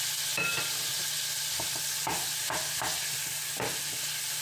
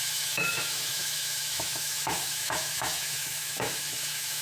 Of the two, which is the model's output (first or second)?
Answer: second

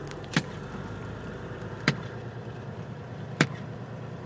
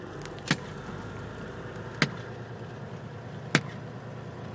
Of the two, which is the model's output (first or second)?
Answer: first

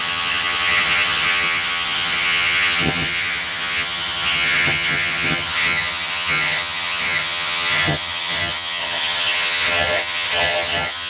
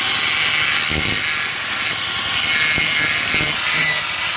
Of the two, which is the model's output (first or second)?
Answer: first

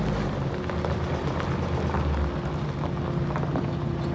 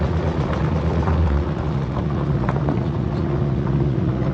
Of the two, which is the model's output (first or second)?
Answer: second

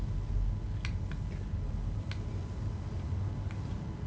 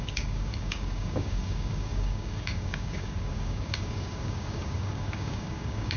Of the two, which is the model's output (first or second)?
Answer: second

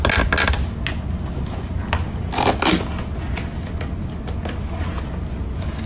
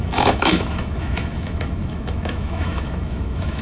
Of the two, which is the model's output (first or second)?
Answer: second